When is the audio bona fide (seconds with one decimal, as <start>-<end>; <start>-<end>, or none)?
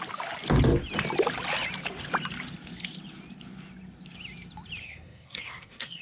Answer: 0.0-4.8